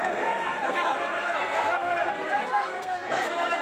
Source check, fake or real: fake